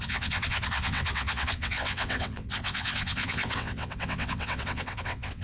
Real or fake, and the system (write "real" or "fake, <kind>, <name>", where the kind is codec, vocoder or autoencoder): fake, vocoder, WaveNeXt